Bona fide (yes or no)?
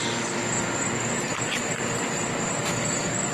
yes